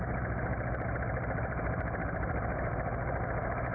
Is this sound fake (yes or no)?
no